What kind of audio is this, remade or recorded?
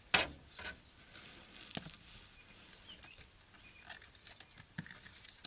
recorded